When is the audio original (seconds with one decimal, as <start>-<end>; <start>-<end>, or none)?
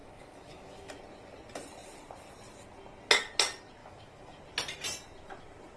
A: 0.9-3.8; 4.4-5.8